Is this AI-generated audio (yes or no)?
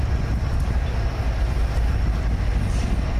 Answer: no